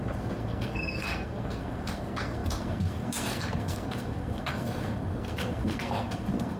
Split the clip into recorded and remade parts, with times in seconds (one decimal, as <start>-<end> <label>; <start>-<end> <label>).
0.0-6.6 remade